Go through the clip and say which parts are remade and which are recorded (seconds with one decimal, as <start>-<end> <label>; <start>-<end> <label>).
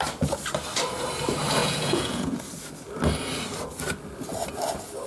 0.0-1.6 recorded; 1.6-2.4 remade; 2.4-5.1 recorded